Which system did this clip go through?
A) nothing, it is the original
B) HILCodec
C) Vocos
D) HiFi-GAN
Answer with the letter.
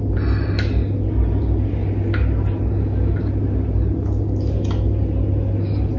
A